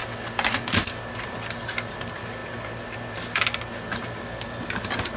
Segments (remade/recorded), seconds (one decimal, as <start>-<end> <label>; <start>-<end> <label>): 0.0-5.2 recorded

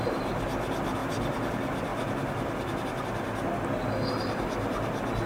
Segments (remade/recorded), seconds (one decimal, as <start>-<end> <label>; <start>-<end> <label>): 0.0-1.0 recorded; 1.0-1.5 remade; 1.5-5.3 recorded

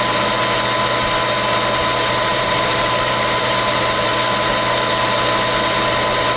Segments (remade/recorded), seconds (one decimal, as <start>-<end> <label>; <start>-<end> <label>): 0.0-2.3 recorded; 2.3-4.1 remade; 4.1-6.4 recorded

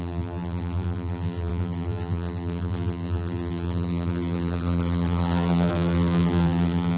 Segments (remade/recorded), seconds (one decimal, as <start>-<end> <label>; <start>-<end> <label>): 0.0-7.0 remade

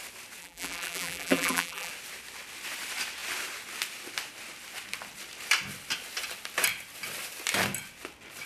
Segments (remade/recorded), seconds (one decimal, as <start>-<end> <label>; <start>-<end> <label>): 0.0-0.4 recorded; 0.4-1.9 remade; 1.9-8.5 recorded

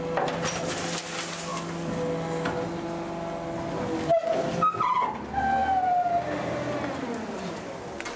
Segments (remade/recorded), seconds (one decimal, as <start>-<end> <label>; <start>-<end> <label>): 0.0-8.2 recorded